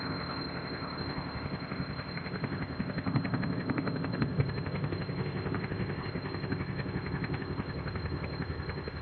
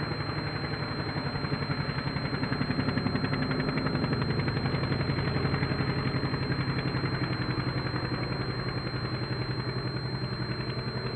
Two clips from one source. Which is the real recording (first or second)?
second